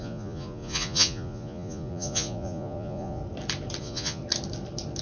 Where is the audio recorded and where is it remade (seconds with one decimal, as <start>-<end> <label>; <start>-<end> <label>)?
0.0-3.2 remade; 3.2-3.8 recorded; 3.8-4.2 remade; 4.2-5.0 recorded